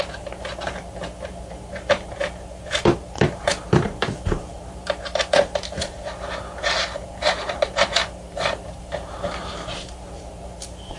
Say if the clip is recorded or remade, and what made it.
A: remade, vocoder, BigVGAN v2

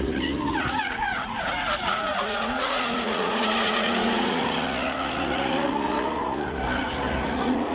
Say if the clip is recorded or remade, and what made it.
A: remade, vocoder, Vocos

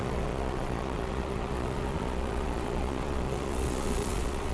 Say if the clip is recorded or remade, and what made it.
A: remade, vocoder, Vocos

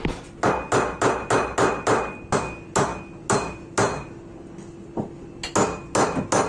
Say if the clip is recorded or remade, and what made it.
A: recorded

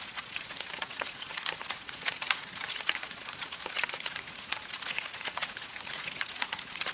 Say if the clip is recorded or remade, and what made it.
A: remade, vocoder, Vocos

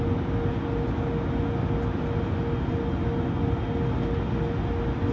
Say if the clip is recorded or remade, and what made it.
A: recorded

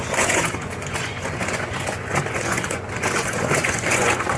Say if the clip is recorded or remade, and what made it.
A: remade, vocoder, Vocos